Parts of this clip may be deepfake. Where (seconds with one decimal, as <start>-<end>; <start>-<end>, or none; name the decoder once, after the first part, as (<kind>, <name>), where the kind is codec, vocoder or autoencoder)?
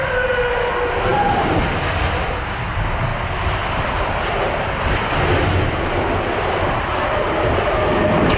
1.1-2.7 (vocoder, BigVGAN v2)